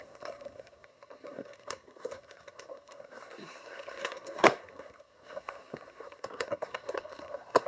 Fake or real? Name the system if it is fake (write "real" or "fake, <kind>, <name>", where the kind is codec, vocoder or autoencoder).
fake, codec, SNAC